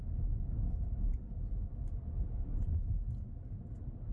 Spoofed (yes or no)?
no